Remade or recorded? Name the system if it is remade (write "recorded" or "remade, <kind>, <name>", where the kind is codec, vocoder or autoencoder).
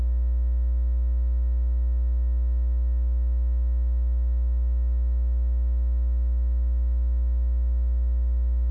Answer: recorded